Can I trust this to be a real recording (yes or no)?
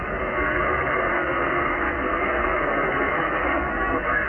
no